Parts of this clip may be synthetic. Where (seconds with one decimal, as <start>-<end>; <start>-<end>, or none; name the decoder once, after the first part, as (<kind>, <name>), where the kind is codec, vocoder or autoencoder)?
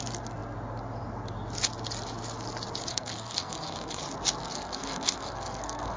2.9-4.0 (codec, SNAC); 4.4-6.0